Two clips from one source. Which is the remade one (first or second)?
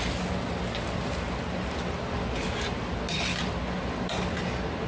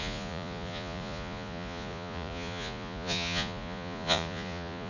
second